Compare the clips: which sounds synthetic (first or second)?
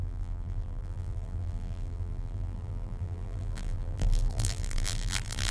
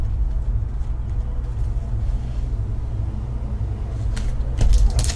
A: first